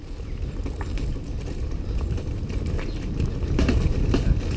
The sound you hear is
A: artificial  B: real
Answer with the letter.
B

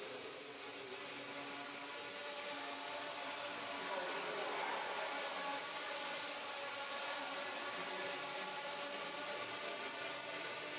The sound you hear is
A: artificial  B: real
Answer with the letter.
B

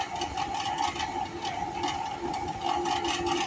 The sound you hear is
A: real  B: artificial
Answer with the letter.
A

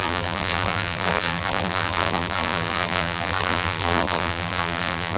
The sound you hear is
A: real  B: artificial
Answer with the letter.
B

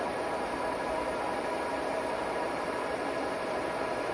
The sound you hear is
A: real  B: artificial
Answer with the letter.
B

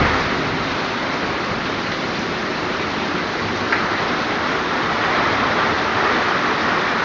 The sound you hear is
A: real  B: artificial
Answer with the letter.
A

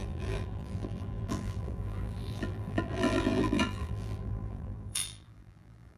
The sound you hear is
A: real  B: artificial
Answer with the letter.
B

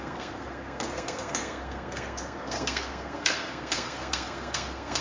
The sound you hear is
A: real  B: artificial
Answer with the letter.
B